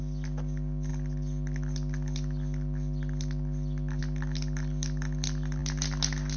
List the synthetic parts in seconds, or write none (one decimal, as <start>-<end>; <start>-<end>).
none